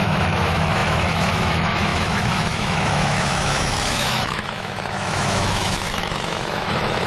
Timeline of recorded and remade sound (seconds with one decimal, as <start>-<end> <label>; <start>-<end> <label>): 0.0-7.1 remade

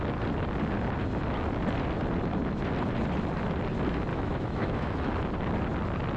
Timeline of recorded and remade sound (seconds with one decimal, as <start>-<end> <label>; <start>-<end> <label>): 0.0-4.1 recorded; 4.1-5.1 remade; 5.1-6.2 recorded

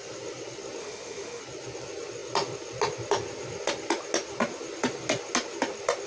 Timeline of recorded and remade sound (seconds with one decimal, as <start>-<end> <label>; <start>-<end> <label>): 0.0-0.8 recorded; 0.8-1.4 remade; 1.4-6.1 recorded

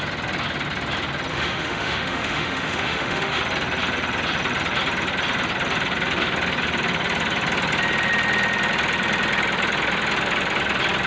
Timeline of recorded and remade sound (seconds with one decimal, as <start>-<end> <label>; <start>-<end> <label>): 0.0-1.3 recorded; 1.3-3.4 remade; 3.4-11.1 recorded